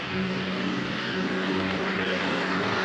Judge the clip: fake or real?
fake